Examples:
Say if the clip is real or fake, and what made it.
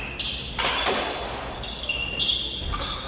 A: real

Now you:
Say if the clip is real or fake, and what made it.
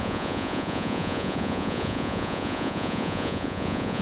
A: fake, vocoder, Vocos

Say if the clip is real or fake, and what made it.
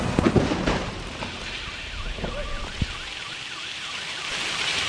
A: real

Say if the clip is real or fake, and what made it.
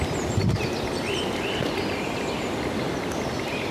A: real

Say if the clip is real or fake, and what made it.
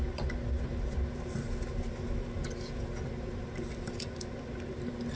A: real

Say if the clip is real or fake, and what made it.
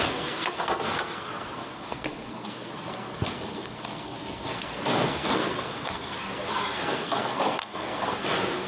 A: fake, codec, SNAC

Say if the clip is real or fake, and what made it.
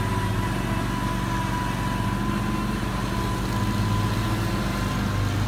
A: real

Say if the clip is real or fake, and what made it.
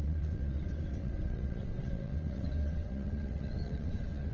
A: fake, vocoder, WaveNeXt